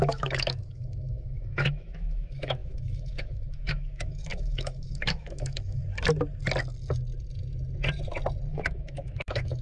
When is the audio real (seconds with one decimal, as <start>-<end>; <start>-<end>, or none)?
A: 5.8-8.5